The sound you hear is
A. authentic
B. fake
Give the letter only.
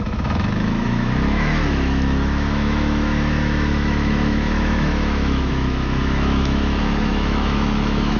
B